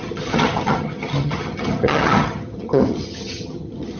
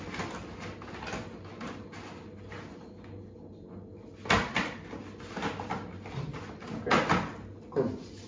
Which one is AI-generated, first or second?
first